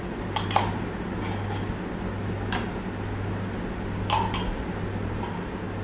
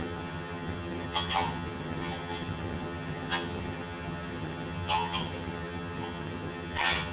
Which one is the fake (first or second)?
second